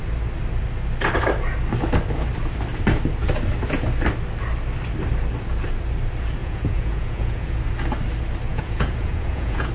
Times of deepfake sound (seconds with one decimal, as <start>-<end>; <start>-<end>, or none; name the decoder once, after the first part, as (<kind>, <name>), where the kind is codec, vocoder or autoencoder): 6.4-7.6 (vocoder, Vocos); 8.5-9.7